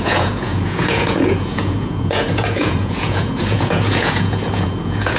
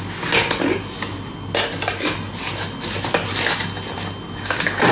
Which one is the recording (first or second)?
second